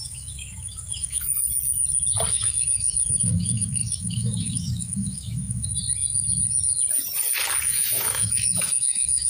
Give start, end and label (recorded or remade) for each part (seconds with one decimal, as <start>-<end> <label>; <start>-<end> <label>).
0.0-1.3 remade; 1.3-2.3 recorded; 2.3-5.7 remade; 5.7-7.6 recorded; 7.6-9.3 remade